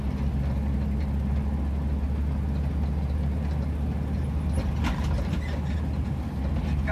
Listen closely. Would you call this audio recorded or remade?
recorded